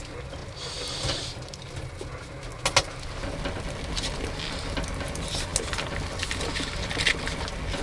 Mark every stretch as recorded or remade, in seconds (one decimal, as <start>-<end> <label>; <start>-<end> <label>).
0.0-7.8 recorded

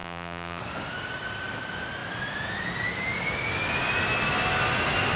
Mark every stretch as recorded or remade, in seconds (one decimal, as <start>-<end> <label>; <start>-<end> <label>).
0.0-0.6 remade; 0.6-5.2 recorded

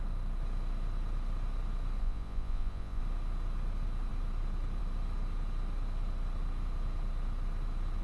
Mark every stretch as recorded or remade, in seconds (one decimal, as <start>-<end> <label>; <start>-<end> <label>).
0.0-2.0 recorded; 2.0-3.0 remade; 3.0-8.0 recorded

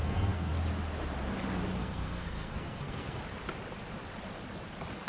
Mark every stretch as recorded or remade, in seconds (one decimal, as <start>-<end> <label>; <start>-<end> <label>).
0.0-0.5 remade; 0.5-1.8 recorded; 1.8-3.2 remade; 3.2-5.1 recorded